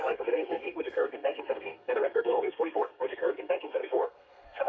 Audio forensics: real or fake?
fake